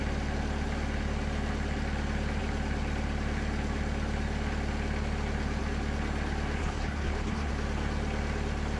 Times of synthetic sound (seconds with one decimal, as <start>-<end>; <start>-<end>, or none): 6.6-7.5